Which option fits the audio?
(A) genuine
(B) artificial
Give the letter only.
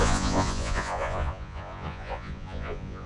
B